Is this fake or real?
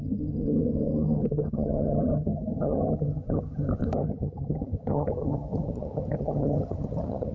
fake